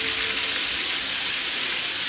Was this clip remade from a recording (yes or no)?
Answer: no